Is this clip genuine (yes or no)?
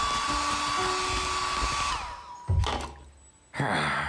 yes